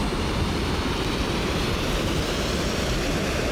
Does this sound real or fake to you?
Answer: real